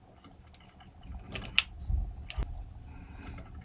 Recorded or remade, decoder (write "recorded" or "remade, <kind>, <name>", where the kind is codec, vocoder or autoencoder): recorded